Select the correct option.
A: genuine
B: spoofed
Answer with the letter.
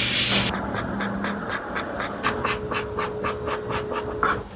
A